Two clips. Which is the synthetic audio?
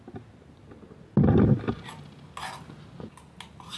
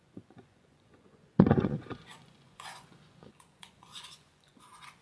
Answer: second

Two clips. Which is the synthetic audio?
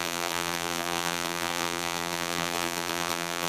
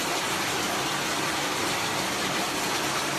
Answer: first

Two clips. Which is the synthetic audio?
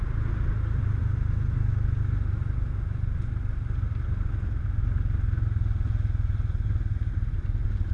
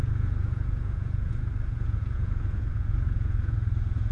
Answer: second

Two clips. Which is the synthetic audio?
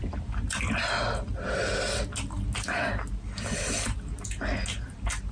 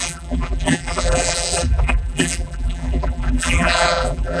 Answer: second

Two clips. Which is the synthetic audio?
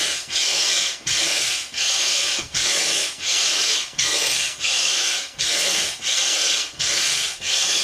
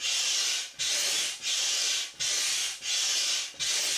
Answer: first